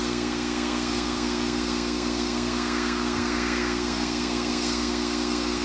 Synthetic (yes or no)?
yes